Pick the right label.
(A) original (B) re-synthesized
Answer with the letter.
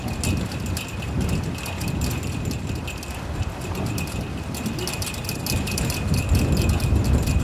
A